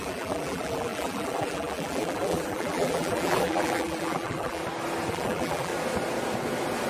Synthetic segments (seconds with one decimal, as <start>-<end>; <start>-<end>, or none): 0.0-4.6; 5.1-5.7